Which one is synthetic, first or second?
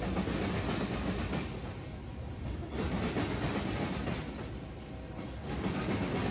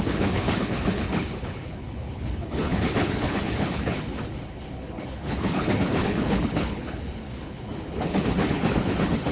second